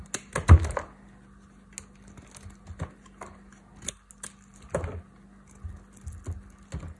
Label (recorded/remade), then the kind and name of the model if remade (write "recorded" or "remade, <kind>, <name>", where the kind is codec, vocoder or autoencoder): recorded